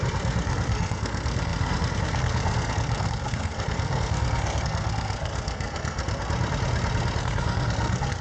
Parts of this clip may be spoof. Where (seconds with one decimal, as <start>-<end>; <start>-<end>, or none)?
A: 0.0-6.0; 7.2-8.2